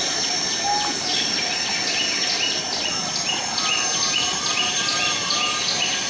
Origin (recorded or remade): recorded